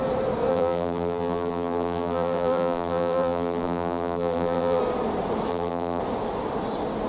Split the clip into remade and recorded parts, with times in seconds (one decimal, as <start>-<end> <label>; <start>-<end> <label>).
0.0-0.5 recorded; 0.5-4.8 remade; 4.8-5.5 recorded; 5.5-6.0 remade; 6.0-7.1 recorded